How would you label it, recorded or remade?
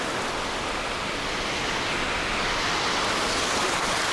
recorded